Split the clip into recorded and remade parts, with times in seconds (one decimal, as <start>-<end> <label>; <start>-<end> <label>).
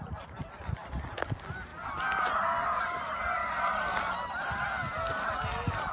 0.0-5.9 recorded